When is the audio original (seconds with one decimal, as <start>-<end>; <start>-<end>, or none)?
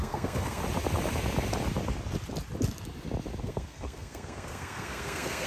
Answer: 0.6-3.4